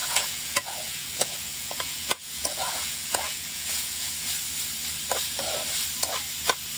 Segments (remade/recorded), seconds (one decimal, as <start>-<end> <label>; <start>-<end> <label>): 0.0-4.1 remade; 4.1-6.8 recorded